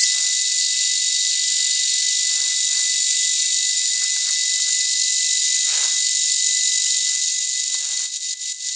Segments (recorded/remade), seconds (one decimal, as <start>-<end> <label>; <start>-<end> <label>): 0.0-8.8 recorded